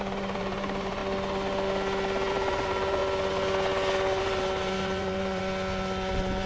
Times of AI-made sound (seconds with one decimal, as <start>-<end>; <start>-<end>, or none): 0.0-1.0; 2.3-3.0; 4.2-5.4; 6.1-6.5